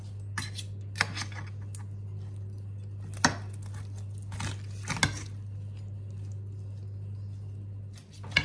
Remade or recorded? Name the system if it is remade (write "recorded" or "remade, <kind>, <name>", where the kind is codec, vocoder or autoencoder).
recorded